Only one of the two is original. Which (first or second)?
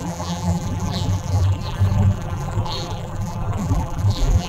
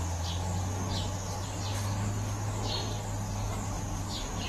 second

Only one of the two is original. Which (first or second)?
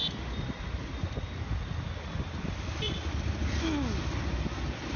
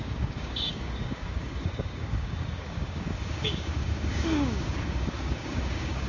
first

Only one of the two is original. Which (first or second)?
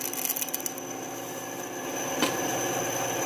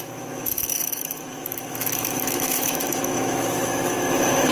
first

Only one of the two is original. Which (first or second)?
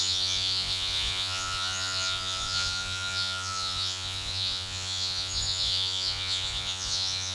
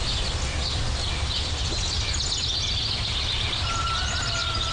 second